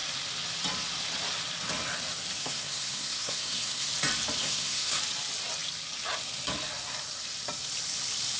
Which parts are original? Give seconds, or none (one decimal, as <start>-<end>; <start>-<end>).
0.0-2.4; 3.9-4.4; 5.0-8.4